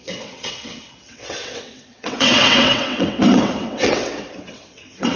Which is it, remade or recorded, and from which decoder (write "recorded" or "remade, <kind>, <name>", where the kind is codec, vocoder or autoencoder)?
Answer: remade, vocoder, WaveNeXt